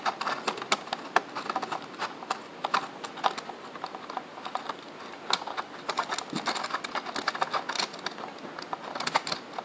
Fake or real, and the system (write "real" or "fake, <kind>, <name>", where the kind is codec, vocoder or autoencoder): real